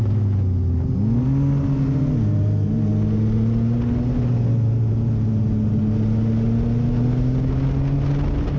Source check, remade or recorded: recorded